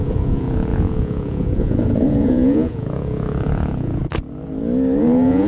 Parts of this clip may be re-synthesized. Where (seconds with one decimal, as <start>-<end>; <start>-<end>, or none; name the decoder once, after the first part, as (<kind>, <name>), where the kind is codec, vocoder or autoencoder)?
0.0-4.0 (vocoder, Vocos); 5.0-5.5